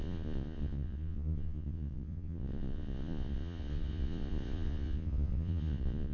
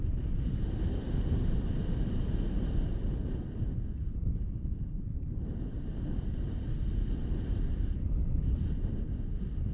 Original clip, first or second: second